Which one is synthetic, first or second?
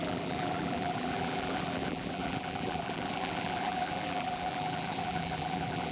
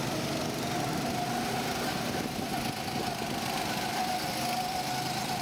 first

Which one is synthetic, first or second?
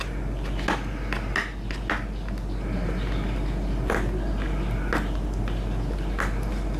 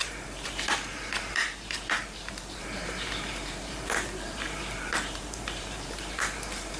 second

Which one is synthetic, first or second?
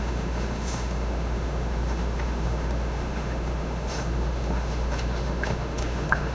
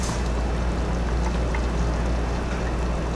first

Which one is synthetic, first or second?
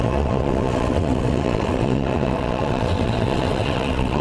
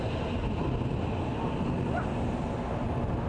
first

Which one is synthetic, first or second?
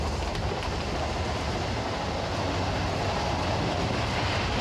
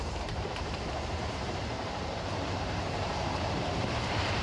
second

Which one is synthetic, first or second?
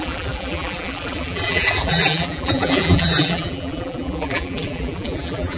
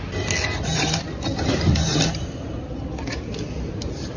first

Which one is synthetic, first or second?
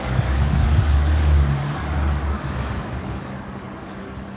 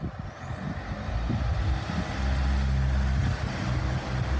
first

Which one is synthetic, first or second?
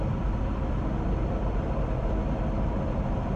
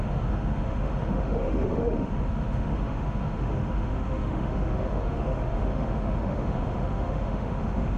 second